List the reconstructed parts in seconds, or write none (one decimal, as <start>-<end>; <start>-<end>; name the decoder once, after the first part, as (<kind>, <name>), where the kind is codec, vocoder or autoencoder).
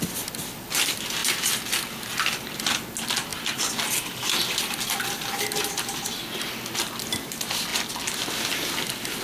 none